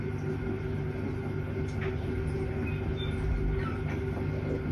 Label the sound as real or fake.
real